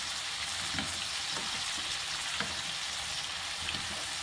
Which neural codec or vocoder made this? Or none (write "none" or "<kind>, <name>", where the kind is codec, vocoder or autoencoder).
none